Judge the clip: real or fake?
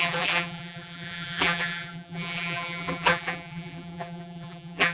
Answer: fake